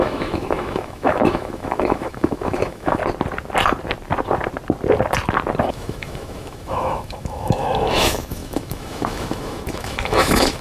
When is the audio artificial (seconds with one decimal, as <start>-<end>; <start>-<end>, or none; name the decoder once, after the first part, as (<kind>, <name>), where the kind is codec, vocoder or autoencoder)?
0.0-3.0 (autoencoder, DAC-VAE); 5.7-10.6